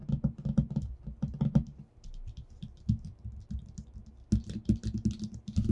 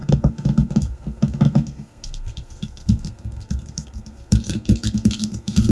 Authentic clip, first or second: first